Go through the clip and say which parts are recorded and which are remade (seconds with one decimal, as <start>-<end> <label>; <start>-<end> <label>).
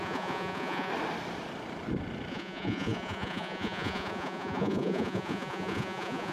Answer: 0.0-0.9 remade; 0.9-2.3 recorded; 2.3-6.3 remade